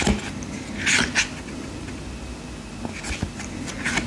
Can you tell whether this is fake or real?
real